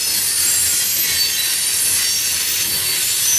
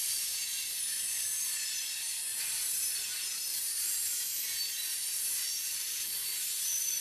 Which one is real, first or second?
first